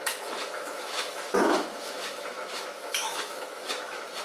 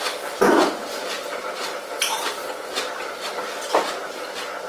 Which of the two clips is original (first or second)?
second